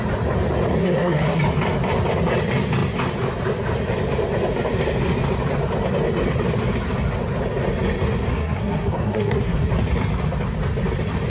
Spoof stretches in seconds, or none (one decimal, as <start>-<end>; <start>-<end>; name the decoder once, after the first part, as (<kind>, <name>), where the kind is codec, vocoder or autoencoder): 0.8-1.4 (codec, SNAC); 8.3-9.7